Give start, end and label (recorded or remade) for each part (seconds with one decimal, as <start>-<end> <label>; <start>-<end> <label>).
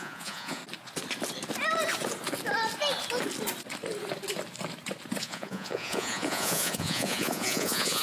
0.0-0.6 remade; 0.6-5.2 recorded; 5.2-8.0 remade